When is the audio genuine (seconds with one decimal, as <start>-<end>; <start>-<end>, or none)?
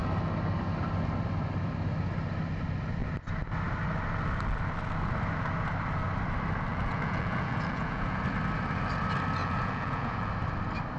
0.0-6.7; 8.2-9.4; 10.3-11.0